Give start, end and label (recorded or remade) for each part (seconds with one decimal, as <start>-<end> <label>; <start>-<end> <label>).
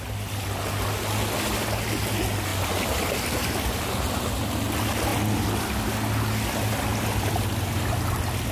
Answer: 0.0-8.5 recorded